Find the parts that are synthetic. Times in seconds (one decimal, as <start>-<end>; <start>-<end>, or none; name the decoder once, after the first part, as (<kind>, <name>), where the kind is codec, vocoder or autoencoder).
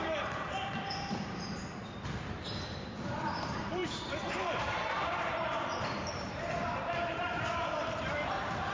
0.0-8.7 (vocoder, BigVGAN v2)